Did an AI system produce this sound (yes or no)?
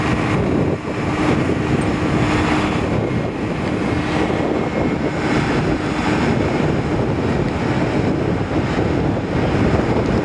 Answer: no